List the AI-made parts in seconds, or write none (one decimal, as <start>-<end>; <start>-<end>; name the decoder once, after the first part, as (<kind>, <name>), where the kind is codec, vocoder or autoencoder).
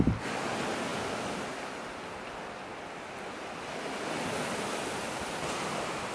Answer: none